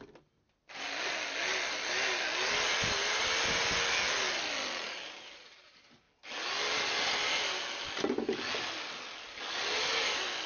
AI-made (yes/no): no